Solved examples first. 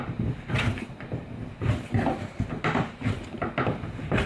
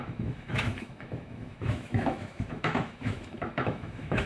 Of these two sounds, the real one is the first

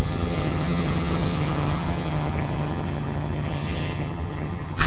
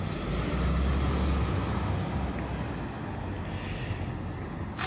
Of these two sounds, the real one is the second